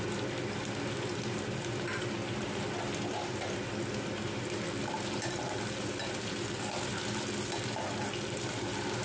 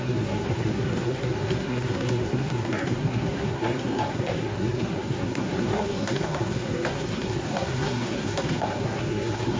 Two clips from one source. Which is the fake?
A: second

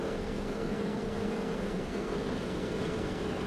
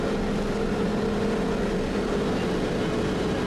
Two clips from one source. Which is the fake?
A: first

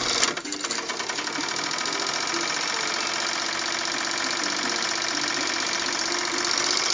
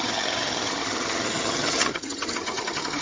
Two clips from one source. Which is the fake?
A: second